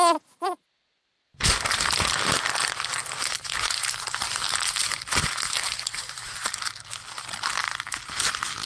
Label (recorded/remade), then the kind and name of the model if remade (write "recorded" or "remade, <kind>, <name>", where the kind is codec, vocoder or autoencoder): recorded